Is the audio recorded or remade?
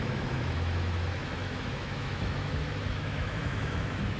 remade